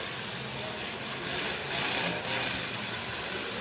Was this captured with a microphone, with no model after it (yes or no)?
yes